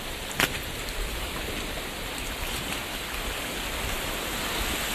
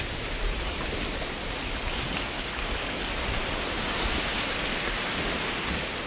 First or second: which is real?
second